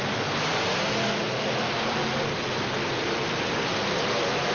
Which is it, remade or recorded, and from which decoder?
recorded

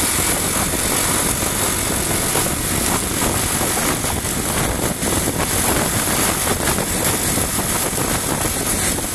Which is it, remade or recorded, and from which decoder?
recorded